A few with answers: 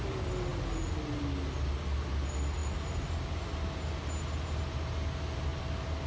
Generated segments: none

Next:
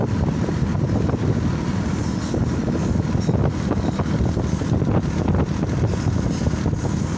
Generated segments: none

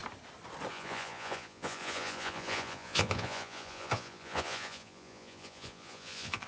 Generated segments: 0.7-6.5 (vocoder, Vocos)